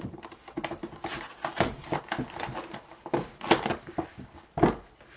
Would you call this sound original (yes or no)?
yes